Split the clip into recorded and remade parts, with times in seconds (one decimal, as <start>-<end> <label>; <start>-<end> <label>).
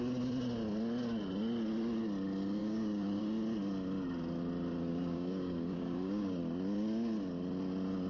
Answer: 0.0-2.6 recorded; 2.6-3.2 remade; 3.2-4.9 recorded; 4.9-6.4 remade; 6.4-8.1 recorded